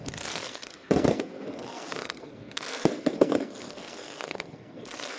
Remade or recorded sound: remade